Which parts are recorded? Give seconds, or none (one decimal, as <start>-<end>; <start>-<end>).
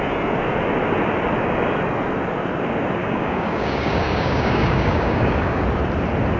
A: 0.0-3.0; 5.6-6.4